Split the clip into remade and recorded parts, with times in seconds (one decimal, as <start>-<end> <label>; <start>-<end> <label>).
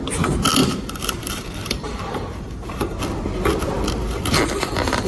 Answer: 0.0-0.6 recorded; 0.6-3.0 remade; 3.0-5.1 recorded